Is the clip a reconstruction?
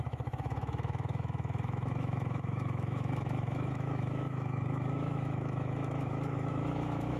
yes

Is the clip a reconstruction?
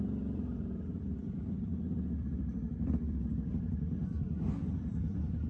yes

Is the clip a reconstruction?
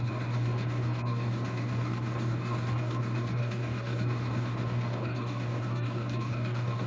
yes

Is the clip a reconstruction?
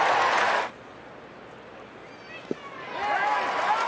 no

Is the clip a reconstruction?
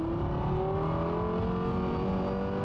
no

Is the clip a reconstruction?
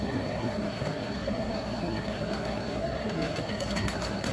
yes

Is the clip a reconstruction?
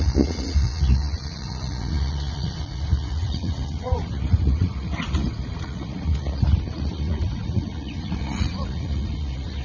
yes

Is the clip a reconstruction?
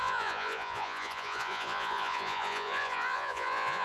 yes